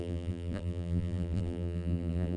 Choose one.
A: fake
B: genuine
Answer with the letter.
A